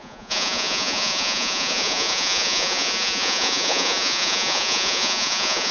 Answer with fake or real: fake